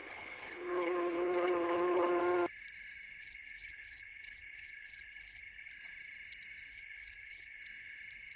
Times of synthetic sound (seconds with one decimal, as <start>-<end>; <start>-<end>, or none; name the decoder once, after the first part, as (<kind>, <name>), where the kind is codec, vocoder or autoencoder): 0.0-2.2 (codec, HILCodec); 3.2-5.7; 6.7-7.6